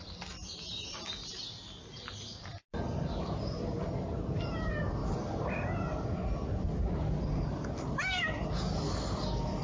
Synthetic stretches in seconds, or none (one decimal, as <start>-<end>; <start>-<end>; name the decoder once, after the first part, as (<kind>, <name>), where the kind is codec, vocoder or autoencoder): 5.0-5.8 (vocoder, BigVGAN v2)